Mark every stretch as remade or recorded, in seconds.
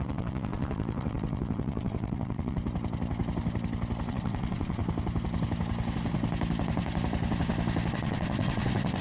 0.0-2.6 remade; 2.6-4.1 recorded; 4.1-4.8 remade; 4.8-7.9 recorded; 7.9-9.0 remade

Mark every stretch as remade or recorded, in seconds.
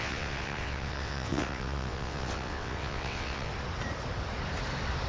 0.0-3.5 remade; 3.5-5.1 recorded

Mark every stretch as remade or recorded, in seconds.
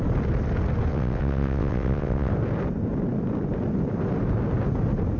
0.0-0.9 recorded; 0.9-2.3 remade; 2.3-5.2 recorded